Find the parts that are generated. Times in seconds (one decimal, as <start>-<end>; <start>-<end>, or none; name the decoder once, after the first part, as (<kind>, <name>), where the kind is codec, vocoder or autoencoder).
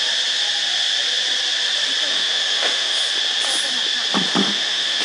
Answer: 2.1-3.1 (autoencoder, DAC-VAE); 4.4-5.0